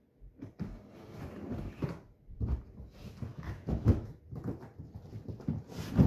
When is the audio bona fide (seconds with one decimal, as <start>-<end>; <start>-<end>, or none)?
0.0-3.3; 4.2-6.1